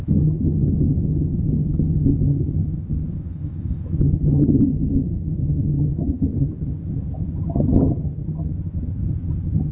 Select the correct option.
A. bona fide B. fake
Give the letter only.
B